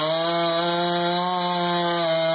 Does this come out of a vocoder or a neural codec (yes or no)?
no